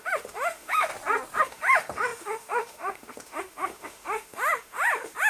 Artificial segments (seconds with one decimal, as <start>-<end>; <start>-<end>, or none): 0.0-0.9; 1.4-5.3